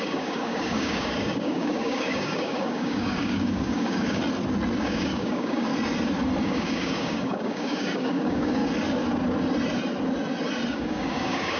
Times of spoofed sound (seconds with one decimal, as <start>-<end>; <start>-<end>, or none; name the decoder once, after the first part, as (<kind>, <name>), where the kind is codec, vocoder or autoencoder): 0.0-4.2 (codec, DAC); 4.8-5.7; 6.4-8.6; 10.7-11.6